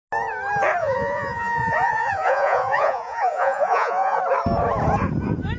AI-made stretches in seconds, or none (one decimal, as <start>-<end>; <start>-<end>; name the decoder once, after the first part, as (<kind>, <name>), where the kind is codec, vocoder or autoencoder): 0.8-4.2 (vocoder, Vocos)